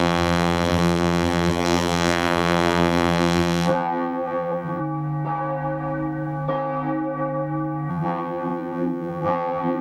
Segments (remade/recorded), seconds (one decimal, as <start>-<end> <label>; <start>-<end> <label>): 0.0-4.8 remade; 4.8-7.9 recorded; 7.9-9.8 remade